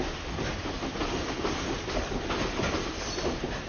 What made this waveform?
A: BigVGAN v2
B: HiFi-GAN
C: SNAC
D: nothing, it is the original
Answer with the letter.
D